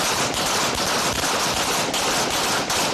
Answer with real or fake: real